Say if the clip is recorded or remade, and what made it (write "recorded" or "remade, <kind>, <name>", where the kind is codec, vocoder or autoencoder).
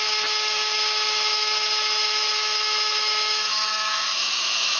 remade, autoencoder, DAC-VAE